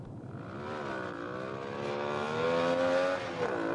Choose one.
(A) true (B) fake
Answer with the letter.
A